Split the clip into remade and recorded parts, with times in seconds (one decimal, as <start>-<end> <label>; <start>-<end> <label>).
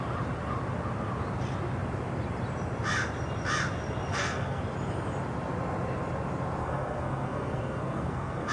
0.0-4.1 recorded; 4.1-4.6 remade; 4.6-6.6 recorded; 6.6-8.5 remade